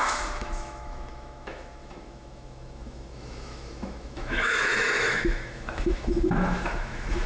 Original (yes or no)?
no